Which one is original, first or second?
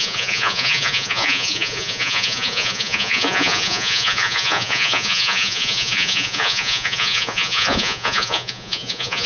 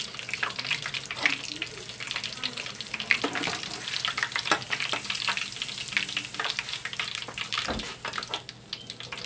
second